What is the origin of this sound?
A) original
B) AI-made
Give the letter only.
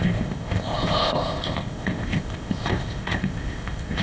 B